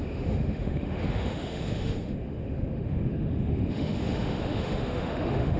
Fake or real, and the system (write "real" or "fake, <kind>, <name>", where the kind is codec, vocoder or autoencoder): fake, autoencoder, DAC-VAE